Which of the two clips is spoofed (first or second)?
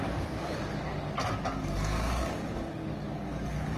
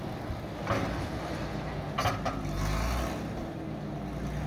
first